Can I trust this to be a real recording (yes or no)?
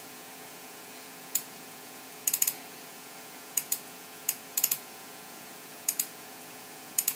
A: no